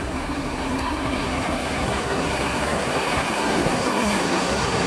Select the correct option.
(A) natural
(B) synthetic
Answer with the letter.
B